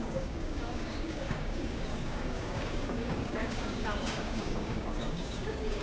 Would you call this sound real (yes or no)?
no